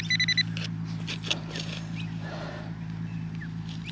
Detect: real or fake real